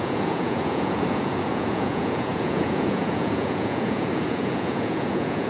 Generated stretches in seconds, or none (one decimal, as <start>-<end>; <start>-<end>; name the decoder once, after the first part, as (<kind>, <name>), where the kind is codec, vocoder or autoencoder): 0.0-5.5 (vocoder, Vocos)